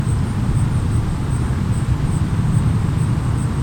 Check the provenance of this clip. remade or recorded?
remade